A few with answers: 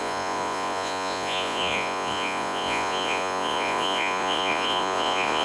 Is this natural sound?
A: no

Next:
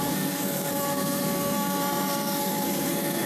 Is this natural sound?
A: no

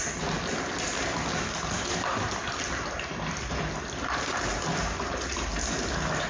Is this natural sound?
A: yes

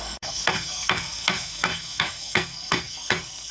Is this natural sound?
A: no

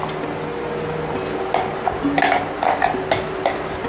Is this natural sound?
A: yes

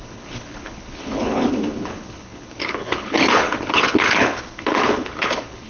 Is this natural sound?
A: no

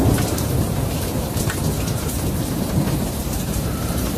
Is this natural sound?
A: no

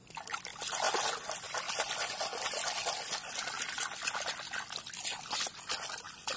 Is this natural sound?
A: yes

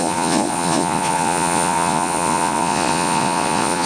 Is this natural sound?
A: no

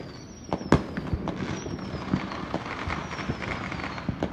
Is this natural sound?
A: yes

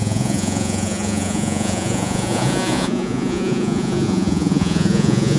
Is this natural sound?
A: no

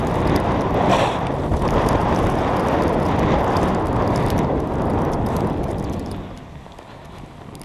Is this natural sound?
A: yes